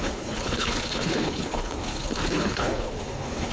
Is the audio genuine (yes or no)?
no